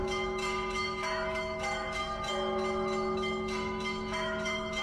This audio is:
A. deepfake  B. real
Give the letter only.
A